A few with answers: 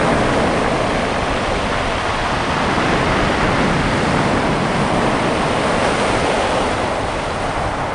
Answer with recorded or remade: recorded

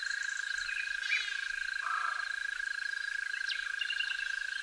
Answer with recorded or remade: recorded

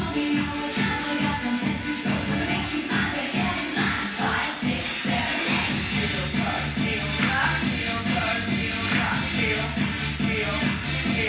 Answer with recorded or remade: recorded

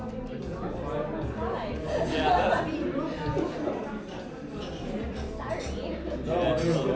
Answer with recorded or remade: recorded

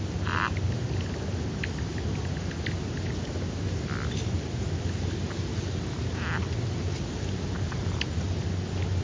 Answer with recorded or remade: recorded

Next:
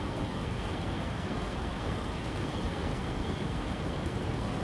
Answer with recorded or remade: remade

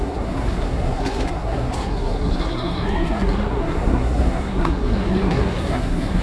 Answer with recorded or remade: remade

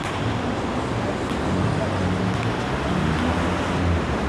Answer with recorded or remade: recorded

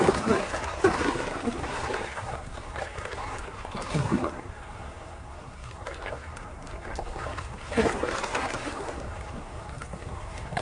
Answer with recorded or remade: remade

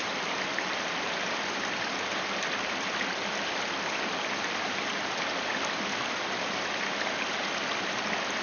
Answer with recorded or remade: recorded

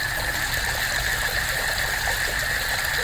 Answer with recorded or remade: recorded